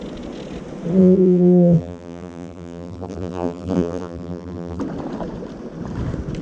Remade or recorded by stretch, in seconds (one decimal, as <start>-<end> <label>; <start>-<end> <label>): 0.0-1.0 recorded; 1.0-4.8 remade; 4.8-6.4 recorded